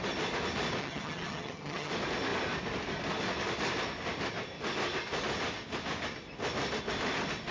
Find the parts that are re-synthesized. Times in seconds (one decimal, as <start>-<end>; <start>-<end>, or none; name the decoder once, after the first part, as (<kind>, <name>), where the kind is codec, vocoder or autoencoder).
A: 0.8-1.9 (vocoder, HiFi-GAN)